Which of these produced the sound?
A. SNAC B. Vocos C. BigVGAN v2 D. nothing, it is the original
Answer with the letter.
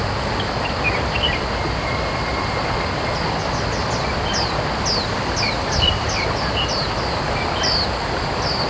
D